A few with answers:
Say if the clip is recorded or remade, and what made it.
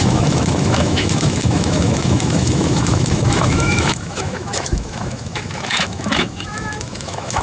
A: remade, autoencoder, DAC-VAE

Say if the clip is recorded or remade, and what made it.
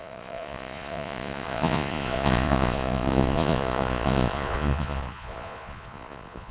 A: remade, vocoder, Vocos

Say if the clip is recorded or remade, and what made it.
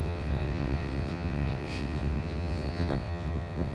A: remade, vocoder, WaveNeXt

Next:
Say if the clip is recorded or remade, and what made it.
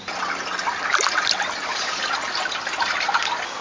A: recorded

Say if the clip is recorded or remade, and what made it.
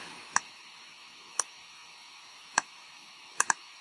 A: remade, autoencoder, DAC-VAE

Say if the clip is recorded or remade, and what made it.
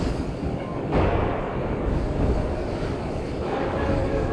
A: remade, codec, DAC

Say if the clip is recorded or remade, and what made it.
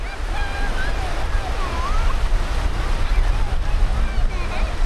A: recorded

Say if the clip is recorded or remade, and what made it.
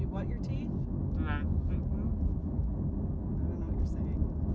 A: recorded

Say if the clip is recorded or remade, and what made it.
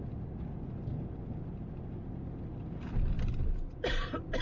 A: recorded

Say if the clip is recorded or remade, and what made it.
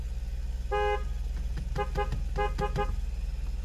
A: recorded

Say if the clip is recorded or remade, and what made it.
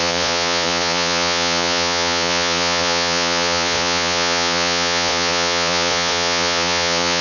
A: remade, vocoder, Vocos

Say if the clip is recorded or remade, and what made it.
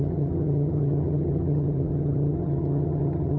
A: remade, vocoder, HiFi-GAN